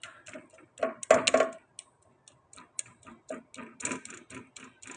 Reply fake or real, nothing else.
real